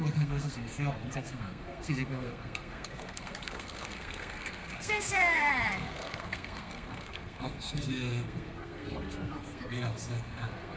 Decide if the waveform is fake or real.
fake